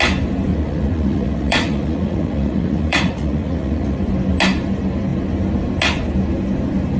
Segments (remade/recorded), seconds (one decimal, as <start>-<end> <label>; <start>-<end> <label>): 0.0-0.5 recorded; 0.5-4.0 remade; 4.0-7.0 recorded